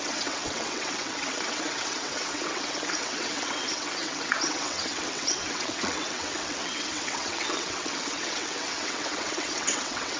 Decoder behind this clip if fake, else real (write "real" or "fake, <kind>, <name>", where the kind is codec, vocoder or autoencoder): fake, vocoder, WaveNeXt